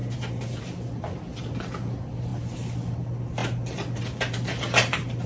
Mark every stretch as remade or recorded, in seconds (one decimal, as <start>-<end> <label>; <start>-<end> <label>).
0.0-5.3 recorded